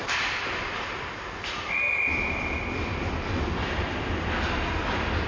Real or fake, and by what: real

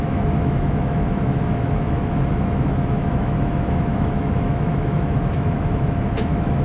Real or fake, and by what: fake, autoencoder, DAC-VAE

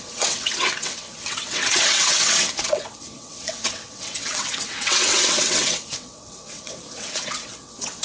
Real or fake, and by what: fake, vocoder, WaveNeXt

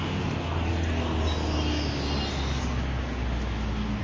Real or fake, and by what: real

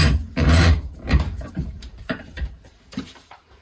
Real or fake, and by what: fake, vocoder, BigVGAN v2